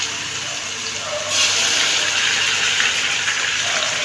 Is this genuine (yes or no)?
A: yes